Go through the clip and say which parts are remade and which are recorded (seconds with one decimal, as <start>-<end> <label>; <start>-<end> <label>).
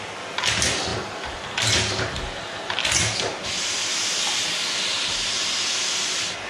0.0-6.5 recorded